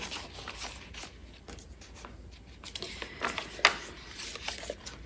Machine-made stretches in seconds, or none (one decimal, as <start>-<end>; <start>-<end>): none